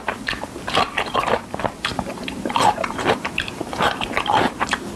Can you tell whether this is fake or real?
fake